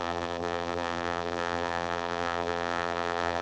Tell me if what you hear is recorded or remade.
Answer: remade